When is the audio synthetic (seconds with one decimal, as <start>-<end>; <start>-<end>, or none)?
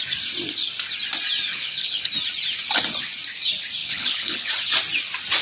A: 1.5-2.1; 3.8-4.5